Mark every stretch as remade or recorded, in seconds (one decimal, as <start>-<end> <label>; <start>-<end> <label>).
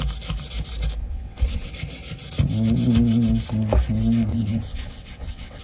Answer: 0.0-1.0 recorded; 1.0-1.7 remade; 1.7-4.3 recorded; 4.3-5.6 remade